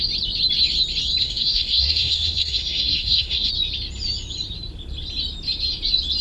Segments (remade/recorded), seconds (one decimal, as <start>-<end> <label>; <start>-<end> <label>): 0.0-1.2 recorded; 1.2-3.5 remade; 3.5-6.2 recorded